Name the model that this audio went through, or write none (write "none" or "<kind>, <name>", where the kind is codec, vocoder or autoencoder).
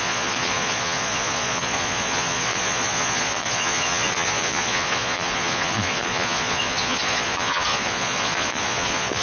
vocoder, Vocos